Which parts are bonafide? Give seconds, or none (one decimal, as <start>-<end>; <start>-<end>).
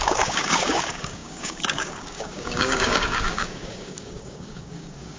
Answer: none